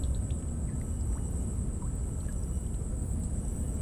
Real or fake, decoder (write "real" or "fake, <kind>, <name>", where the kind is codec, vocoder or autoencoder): real